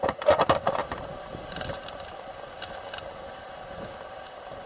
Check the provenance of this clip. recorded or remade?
recorded